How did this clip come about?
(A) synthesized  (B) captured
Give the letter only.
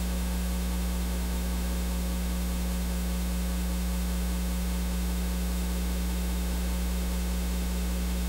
A